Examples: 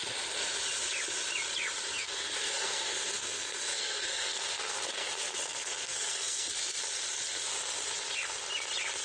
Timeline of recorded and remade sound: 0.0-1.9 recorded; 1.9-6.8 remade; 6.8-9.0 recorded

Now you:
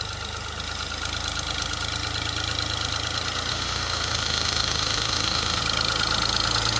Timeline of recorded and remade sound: 0.0-3.5 recorded; 3.5-5.6 remade; 5.6-6.8 recorded

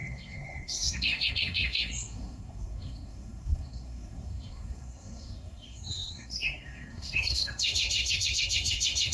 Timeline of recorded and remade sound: 0.0-9.1 remade